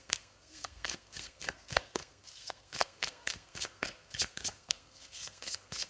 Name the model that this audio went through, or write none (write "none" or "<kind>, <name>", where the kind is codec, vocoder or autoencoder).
codec, SNAC